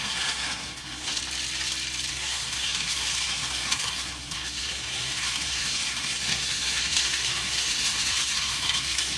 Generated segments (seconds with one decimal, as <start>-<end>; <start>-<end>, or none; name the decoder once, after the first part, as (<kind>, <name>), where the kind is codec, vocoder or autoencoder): 0.0-1.2 (codec, SNAC); 2.1-9.2